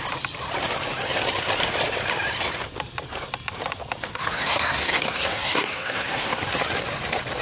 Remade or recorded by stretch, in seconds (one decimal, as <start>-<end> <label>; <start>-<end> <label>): 0.0-4.1 recorded; 4.1-6.4 remade; 6.4-7.4 recorded

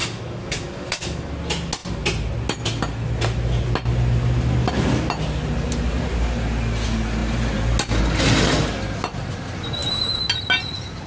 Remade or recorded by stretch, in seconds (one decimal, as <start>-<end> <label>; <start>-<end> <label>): 0.0-1.3 remade; 1.3-11.1 recorded

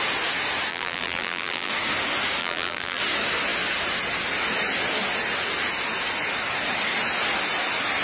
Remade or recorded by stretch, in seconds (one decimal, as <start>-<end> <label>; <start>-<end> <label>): 0.0-0.7 recorded; 0.7-1.7 remade; 1.7-2.4 recorded; 2.4-3.0 remade; 3.0-8.0 recorded

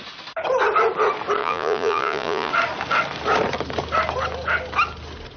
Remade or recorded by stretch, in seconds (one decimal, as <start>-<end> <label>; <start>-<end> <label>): 0.0-1.4 recorded; 1.4-2.5 remade; 2.5-5.4 recorded

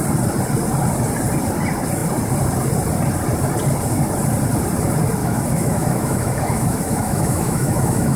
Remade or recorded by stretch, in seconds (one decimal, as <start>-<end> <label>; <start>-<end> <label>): 0.0-5.2 recorded; 5.2-8.2 remade

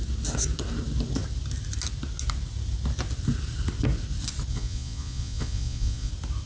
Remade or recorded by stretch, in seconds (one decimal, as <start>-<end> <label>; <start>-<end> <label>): 0.0-4.5 recorded; 4.5-6.1 remade; 6.1-6.5 recorded